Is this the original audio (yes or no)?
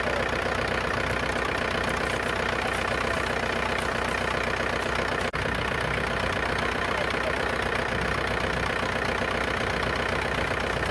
yes